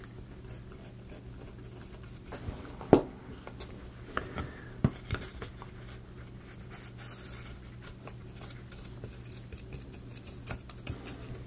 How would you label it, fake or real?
real